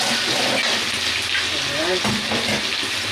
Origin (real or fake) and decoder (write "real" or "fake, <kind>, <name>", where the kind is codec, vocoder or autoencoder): real